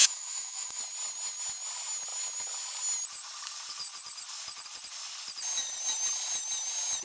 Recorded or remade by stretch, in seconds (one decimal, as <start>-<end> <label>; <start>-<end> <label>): 0.0-0.8 remade; 0.8-7.0 recorded